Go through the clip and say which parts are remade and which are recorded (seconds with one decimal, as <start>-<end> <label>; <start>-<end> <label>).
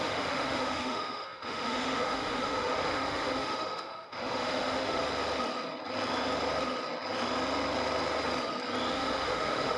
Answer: 0.0-5.0 remade; 5.0-8.9 recorded; 8.9-9.8 remade